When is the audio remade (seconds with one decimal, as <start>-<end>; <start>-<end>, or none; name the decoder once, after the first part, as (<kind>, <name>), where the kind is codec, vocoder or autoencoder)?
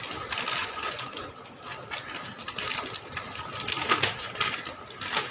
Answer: 0.6-1.3 (vocoder, Vocos)